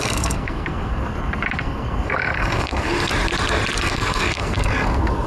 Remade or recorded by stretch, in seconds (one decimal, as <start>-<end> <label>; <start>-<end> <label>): 0.0-3.1 remade; 3.1-3.8 recorded; 3.8-5.3 remade